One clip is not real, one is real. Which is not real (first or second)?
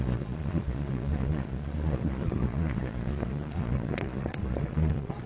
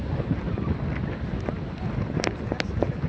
first